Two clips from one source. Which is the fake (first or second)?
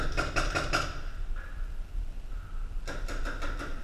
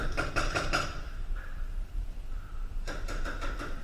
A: second